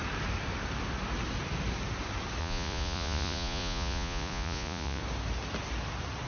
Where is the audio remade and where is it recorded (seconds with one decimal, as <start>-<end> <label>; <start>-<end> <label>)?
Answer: 0.0-2.4 recorded; 2.4-5.0 remade; 5.0-6.3 recorded